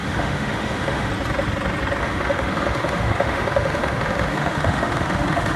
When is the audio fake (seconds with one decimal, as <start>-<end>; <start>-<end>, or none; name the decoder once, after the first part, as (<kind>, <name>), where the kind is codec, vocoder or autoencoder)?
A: 0.0-1.1 (autoencoder, DAC-VAE); 2.0-5.6